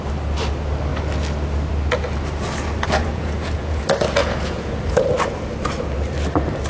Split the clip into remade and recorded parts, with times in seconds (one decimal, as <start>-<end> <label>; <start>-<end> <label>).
0.0-3.0 recorded; 3.0-3.8 remade; 3.8-4.2 recorded; 4.2-5.1 remade; 5.1-6.7 recorded